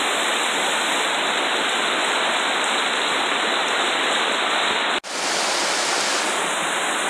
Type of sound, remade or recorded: recorded